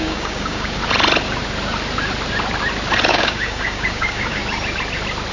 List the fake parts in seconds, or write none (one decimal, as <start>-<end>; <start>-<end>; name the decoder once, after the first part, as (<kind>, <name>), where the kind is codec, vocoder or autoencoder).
0.0-0.8 (codec, DAC); 3.1-4.4